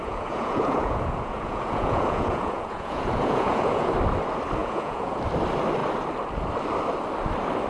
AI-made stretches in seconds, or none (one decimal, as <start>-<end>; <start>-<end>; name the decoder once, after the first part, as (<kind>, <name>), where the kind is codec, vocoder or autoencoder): 0.0-3.9 (vocoder, Vocos); 4.6-5.2